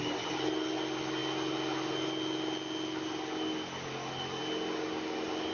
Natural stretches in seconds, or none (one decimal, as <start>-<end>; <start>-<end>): 0.0-5.5